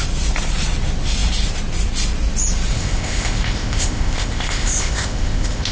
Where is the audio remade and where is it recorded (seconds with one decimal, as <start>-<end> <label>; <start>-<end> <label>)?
0.0-2.7 recorded; 2.7-5.7 remade

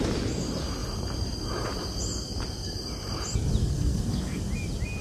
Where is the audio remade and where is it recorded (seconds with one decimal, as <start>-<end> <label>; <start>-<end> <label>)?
0.0-3.6 recorded; 3.6-4.4 remade; 4.4-5.0 recorded

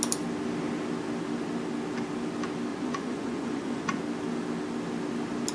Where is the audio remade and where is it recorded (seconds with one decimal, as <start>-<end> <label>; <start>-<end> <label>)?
0.0-2.7 recorded; 2.7-4.0 remade; 4.0-5.5 recorded

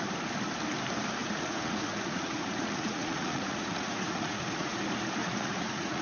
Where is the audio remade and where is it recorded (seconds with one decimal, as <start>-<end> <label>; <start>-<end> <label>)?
0.0-1.2 recorded; 1.2-4.8 remade; 4.8-5.2 recorded; 5.2-6.0 remade

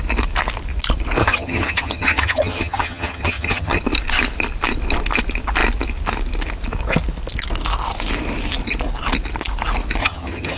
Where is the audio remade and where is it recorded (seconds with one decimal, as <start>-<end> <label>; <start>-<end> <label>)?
0.0-1.2 recorded; 1.2-3.8 remade; 3.8-10.0 recorded; 10.0-10.6 remade